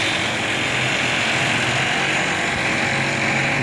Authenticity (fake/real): real